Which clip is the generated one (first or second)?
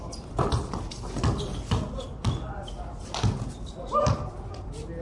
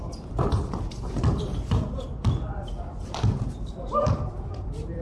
second